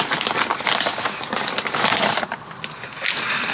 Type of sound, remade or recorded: recorded